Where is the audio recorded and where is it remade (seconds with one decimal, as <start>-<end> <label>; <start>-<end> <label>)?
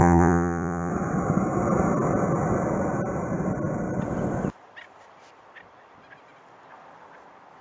0.0-0.9 remade; 0.9-7.6 recorded